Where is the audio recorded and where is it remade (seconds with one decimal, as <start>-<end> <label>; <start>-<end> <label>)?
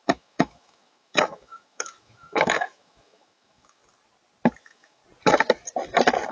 0.0-3.8 remade; 3.8-4.6 recorded; 4.6-5.0 remade; 5.0-6.3 recorded